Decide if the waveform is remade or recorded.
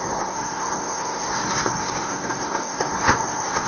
remade